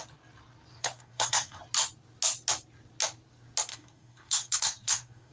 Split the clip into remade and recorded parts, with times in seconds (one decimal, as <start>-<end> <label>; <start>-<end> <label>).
0.0-0.7 recorded; 0.7-1.6 remade; 1.6-3.7 recorded; 3.7-5.3 remade